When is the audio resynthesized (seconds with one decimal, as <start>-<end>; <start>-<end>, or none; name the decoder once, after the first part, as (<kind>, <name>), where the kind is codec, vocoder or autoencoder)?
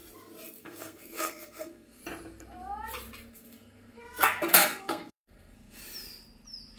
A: 0.6-2.0 (codec, SNAC); 3.3-5.8